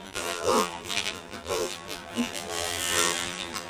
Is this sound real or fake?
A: fake